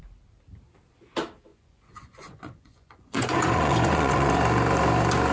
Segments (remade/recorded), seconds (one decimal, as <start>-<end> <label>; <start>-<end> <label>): 0.0-1.5 recorded; 1.5-4.3 remade; 4.3-5.3 recorded